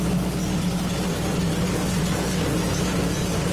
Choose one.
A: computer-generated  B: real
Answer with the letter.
B